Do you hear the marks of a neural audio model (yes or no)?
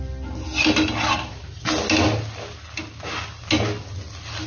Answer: no